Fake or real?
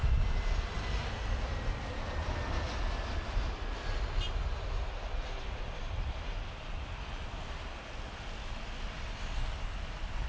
real